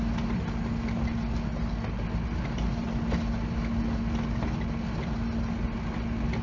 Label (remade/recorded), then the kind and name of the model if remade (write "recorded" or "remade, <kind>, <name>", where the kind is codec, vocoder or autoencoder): recorded